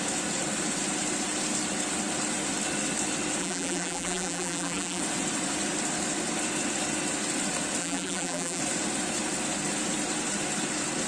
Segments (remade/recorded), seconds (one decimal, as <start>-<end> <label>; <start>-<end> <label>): 0.0-3.4 recorded; 3.4-5.0 remade; 5.0-7.8 recorded; 7.8-8.6 remade; 8.6-11.1 recorded